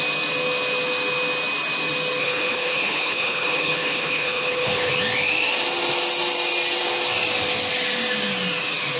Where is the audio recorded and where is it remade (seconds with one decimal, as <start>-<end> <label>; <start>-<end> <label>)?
0.0-2.2 recorded; 2.2-4.9 remade; 4.9-9.0 recorded